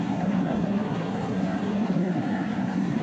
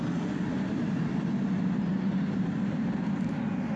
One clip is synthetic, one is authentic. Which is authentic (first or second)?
second